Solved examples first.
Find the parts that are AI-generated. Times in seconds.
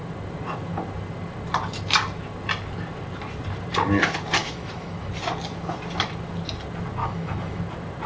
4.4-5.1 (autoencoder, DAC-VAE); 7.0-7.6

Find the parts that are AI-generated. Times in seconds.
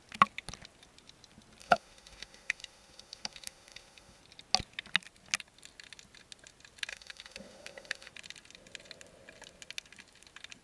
1.6-4.2 (autoencoder, DAC-VAE); 6.9-8.1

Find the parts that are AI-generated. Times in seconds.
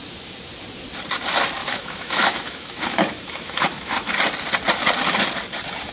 1.6-4.1 (autoencoder, DAC-VAE)